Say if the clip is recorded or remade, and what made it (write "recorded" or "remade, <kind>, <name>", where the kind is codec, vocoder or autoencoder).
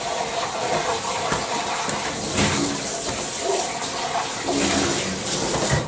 recorded